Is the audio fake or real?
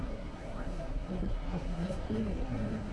fake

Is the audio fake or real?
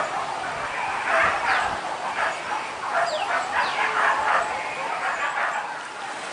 real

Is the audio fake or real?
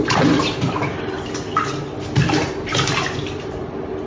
real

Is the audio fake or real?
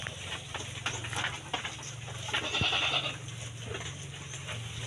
real